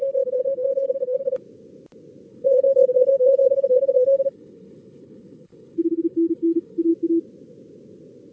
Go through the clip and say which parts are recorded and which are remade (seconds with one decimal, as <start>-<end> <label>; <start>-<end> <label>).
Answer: 0.0-1.4 remade; 1.4-2.3 recorded; 2.3-6.9 remade; 6.9-8.3 recorded